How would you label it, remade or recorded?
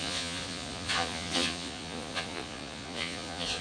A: remade